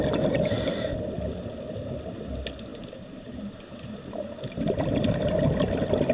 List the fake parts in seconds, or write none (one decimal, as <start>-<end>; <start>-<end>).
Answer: 2.7-3.6